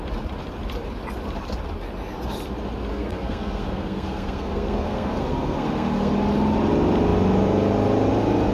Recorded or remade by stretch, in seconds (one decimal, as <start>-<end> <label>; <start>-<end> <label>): 0.0-2.9 recorded; 2.9-6.1 remade; 6.1-8.5 recorded